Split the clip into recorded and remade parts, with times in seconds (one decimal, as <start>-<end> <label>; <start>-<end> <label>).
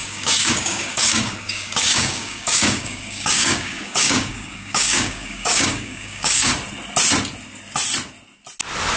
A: 0.0-6.5 remade; 6.5-9.0 recorded